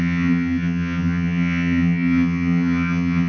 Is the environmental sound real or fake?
fake